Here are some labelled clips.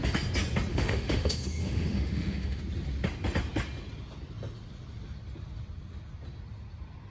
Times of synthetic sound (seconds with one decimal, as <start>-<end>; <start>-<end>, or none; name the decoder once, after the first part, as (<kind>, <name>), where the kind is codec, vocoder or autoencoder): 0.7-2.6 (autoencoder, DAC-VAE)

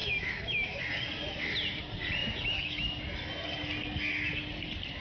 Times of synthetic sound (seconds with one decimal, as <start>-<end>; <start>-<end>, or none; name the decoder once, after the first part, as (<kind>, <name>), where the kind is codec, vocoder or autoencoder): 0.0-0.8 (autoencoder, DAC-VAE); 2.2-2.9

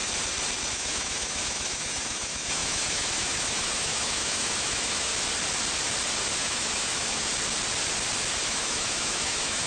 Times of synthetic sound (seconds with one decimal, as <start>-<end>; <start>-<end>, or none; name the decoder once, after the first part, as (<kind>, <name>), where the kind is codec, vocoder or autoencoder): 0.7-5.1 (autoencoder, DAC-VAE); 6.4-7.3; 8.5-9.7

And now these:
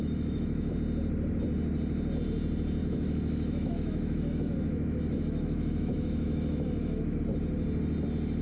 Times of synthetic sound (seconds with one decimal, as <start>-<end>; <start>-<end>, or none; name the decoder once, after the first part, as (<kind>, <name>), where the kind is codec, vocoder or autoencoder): 0.0-0.7 (autoencoder, DAC-VAE); 2.8-7.2

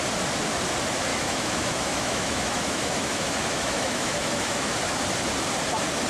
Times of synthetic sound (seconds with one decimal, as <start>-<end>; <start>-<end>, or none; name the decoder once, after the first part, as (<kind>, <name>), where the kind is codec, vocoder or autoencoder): 1.1-4.8 (autoencoder, DAC-VAE)

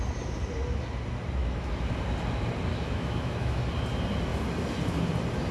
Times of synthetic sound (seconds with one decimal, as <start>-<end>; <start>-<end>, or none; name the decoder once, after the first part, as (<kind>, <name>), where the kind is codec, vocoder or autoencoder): 1.4-1.9 (autoencoder, DAC-VAE); 2.7-3.6

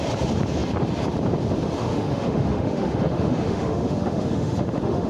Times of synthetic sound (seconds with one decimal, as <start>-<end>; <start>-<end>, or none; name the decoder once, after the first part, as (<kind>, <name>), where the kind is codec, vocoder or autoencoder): 1.8-5.1 (autoencoder, DAC-VAE)

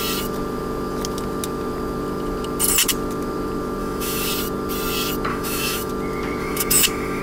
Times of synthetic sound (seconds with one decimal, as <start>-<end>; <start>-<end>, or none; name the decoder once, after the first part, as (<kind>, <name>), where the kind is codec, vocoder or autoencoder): 3.8-4.3 (autoencoder, DAC-VAE); 5.3-5.9; 6.4-7.2